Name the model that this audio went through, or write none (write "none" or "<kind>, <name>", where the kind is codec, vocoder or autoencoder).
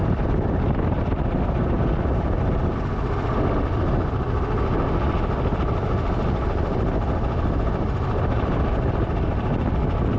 none